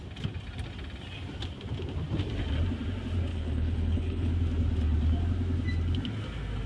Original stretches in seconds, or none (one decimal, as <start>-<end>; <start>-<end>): 0.0-3.3; 4.3-6.7